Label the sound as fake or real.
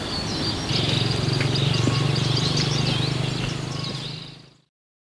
real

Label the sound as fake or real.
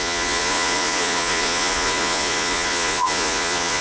fake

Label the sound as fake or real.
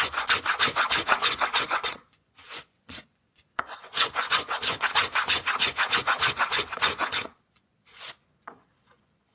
fake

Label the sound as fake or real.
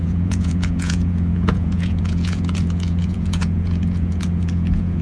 fake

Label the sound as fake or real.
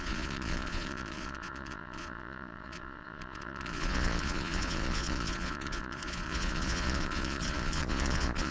fake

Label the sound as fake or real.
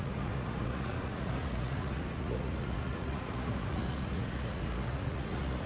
fake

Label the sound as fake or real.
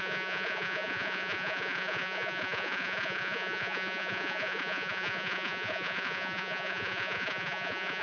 fake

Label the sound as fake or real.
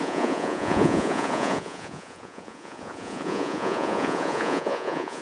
fake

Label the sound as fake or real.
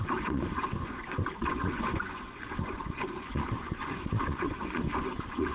fake